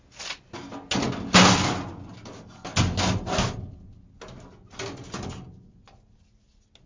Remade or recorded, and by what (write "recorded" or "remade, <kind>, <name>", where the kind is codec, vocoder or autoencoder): recorded